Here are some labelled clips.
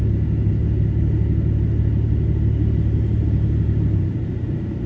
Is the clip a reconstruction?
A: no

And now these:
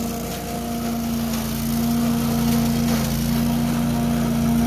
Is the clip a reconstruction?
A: no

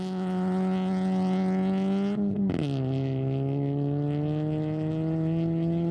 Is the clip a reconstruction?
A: no